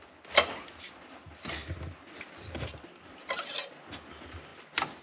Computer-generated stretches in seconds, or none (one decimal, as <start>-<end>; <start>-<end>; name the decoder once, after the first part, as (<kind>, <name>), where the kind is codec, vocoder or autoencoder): none